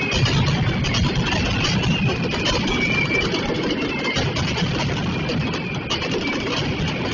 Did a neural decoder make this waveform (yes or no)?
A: no